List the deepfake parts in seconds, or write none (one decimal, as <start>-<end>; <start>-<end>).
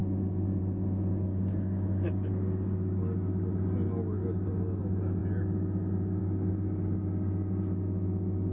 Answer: 1.3-2.3